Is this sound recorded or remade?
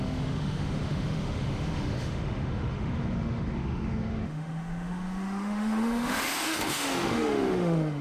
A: remade